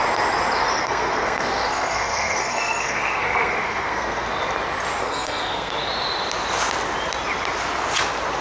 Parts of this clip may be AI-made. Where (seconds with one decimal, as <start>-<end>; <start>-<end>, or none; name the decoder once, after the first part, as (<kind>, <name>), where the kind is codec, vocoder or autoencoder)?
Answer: 0.8-4.3 (codec, SNAC); 5.0-5.7